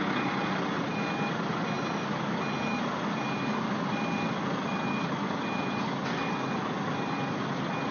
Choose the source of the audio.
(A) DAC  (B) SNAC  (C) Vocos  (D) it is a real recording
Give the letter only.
D